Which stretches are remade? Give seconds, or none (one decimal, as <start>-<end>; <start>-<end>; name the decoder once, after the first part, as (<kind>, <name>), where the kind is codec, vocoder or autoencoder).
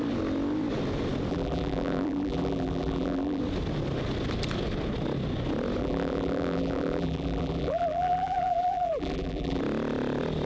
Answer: 1.3-3.4 (vocoder, BigVGAN v2); 5.8-9.6